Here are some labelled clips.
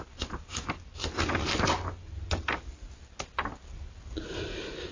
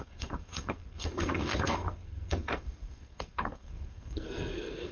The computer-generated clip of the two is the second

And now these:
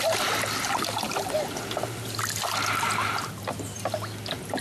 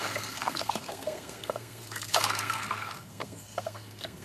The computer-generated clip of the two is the second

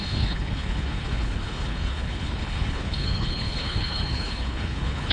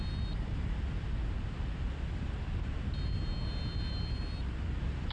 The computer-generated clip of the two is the first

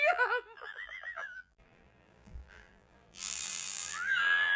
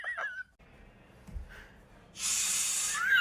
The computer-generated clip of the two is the first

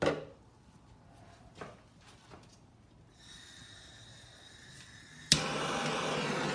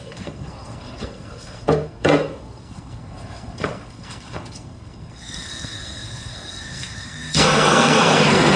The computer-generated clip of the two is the second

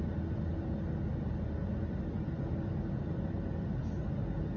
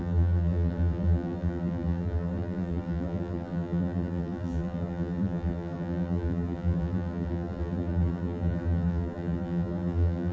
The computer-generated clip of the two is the second